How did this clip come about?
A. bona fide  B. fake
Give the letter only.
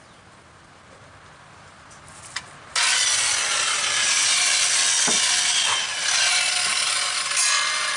A